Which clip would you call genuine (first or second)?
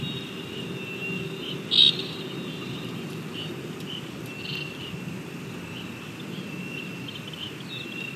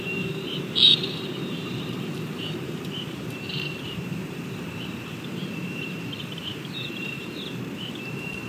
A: first